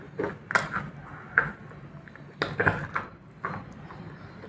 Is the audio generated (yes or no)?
no